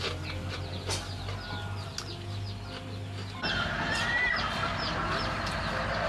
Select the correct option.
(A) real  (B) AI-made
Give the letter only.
A